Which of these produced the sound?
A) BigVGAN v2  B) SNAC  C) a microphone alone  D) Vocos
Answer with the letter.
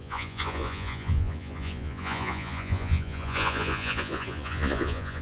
D